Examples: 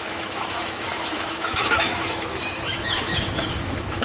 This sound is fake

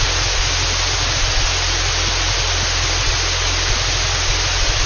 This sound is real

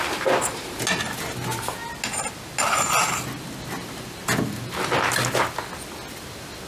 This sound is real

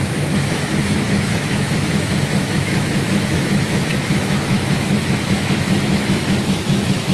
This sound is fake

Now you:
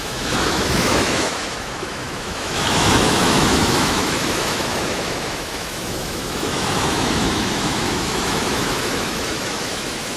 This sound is fake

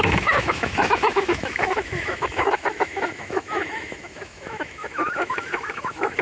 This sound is fake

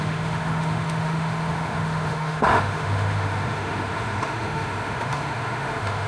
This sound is fake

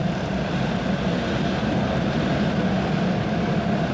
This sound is real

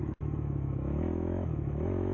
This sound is fake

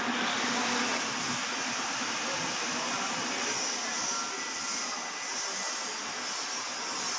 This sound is real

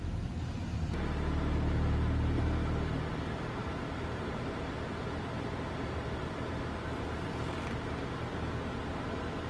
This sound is real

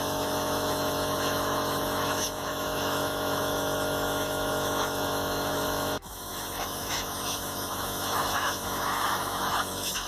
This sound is fake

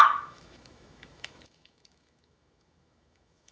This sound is fake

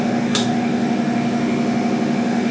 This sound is fake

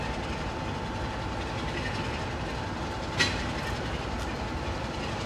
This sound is real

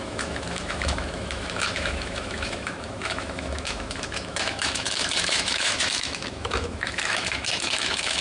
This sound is fake